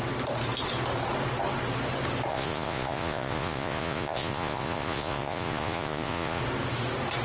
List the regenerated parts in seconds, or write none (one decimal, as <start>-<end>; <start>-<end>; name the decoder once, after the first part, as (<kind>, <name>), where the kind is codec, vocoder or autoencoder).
2.3-6.4 (vocoder, Vocos)